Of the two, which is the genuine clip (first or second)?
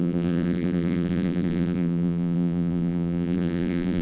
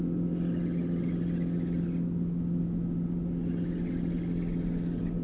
second